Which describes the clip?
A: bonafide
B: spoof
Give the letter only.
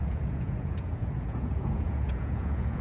B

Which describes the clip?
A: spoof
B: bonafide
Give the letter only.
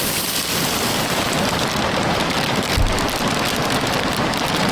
B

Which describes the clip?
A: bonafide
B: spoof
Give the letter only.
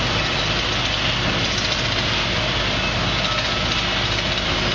A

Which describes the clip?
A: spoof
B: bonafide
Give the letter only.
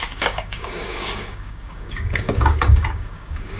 A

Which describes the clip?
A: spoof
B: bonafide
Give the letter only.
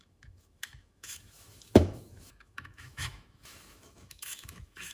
A